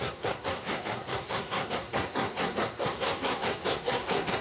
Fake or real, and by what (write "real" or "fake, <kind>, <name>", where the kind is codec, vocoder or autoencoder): fake, codec, SNAC